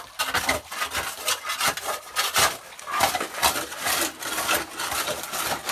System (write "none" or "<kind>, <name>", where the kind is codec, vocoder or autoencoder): none